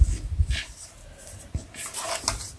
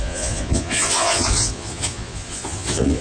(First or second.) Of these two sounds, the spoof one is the second